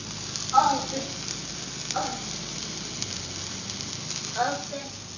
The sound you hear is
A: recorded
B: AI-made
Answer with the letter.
A